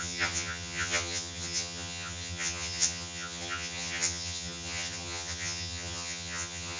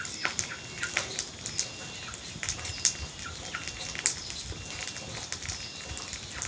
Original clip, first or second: second